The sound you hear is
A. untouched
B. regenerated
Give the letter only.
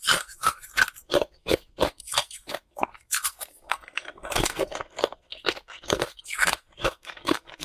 B